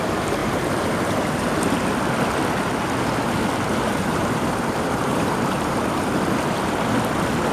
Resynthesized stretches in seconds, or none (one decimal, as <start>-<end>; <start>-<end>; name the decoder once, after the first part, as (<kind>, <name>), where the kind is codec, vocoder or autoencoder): 0.4-1.1 (vocoder, BigVGAN v2); 3.9-5.8

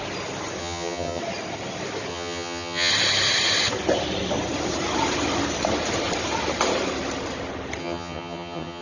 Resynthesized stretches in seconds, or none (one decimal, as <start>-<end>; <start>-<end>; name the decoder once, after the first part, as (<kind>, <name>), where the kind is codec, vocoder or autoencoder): 0.6-1.2 (vocoder, HiFi-GAN); 2.1-2.9; 7.8-8.8

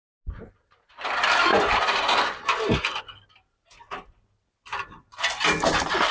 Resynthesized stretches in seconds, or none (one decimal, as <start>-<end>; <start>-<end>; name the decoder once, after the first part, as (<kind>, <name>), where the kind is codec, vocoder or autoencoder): none

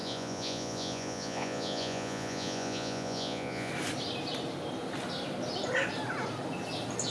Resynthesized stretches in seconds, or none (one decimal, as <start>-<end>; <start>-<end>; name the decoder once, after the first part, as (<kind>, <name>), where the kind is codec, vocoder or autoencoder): 0.0-3.7 (vocoder, Vocos)

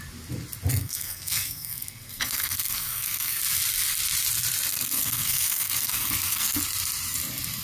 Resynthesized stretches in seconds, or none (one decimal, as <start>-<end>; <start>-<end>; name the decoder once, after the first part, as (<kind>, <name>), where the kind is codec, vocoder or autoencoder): 0.7-3.4 (codec, SNAC); 4.7-6.6

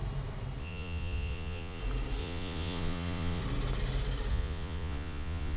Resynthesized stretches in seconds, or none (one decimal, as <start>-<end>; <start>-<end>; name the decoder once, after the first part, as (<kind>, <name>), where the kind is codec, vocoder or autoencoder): 0.6-1.8 (vocoder, Vocos); 2.2-3.4; 4.3-5.6

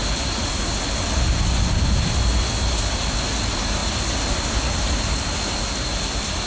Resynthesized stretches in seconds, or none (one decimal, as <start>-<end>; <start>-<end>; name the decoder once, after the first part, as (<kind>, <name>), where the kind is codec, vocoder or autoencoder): none

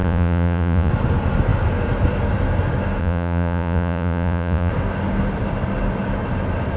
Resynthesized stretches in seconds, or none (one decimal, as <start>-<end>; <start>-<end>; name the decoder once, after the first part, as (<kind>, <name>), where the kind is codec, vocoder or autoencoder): 0.0-0.9 (vocoder, Vocos); 3.0-4.7